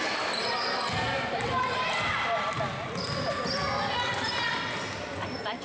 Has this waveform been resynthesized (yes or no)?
yes